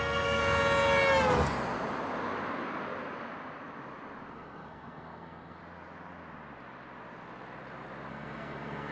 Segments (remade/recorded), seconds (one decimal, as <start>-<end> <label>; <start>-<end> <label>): 0.0-0.4 remade; 0.4-4.3 recorded; 4.3-5.6 remade; 5.6-8.1 recorded; 8.1-8.9 remade